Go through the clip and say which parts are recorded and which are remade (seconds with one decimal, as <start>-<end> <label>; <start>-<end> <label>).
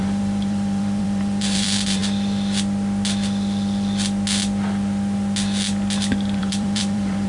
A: 0.0-2.0 remade; 2.0-6.4 recorded; 6.4-7.3 remade